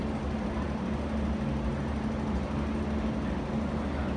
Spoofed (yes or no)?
no